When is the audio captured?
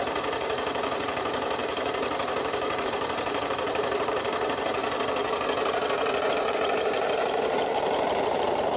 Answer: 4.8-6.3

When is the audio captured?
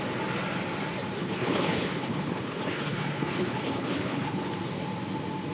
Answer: 0.0-1.2; 4.5-5.5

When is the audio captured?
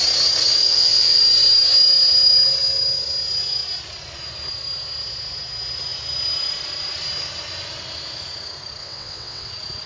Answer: 0.0-0.6; 1.2-8.8; 9.5-9.9